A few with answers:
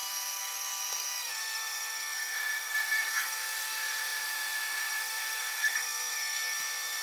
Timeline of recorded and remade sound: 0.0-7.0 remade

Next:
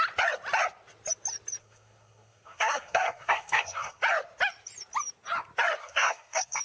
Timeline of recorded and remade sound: 0.0-1.6 recorded; 1.6-4.0 remade; 4.0-5.8 recorded; 5.8-6.6 remade

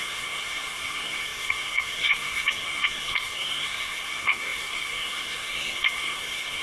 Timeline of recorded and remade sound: 0.0-6.6 remade